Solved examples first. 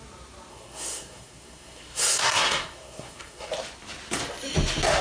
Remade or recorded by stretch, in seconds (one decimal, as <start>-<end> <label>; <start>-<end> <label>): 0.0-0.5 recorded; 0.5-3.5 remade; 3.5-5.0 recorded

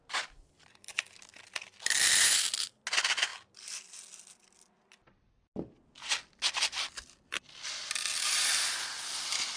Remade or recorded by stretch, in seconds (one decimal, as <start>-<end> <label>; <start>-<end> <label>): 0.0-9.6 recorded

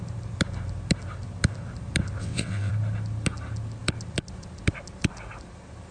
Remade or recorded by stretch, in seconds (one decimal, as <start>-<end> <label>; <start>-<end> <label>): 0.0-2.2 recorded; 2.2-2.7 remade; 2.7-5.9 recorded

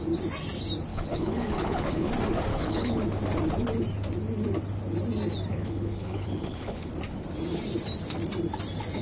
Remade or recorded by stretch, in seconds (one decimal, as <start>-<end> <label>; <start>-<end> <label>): 0.0-0.9 recorded; 0.9-2.1 remade; 2.1-2.5 recorded; 2.5-3.0 remade; 3.0-5.5 recorded; 5.5-6.9 remade; 6.9-9.0 recorded